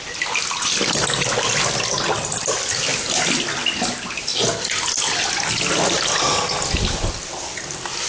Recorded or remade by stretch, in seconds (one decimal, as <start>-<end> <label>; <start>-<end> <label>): 0.0-8.1 recorded